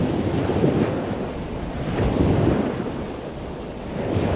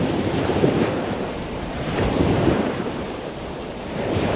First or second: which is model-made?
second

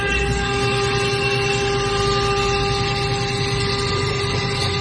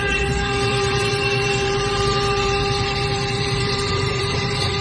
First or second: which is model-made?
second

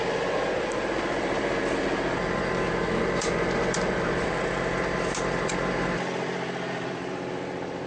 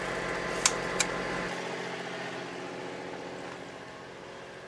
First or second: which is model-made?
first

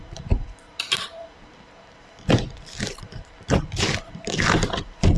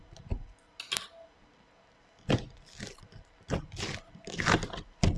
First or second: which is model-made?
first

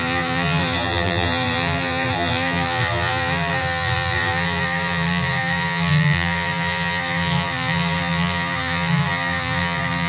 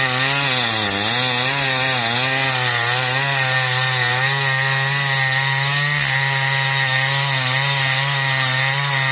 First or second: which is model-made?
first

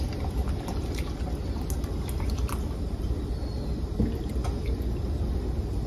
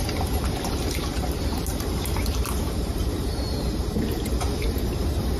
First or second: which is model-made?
second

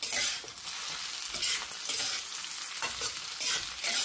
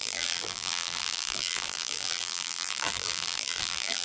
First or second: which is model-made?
second